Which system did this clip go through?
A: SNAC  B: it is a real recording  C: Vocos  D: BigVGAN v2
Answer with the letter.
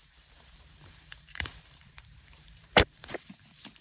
D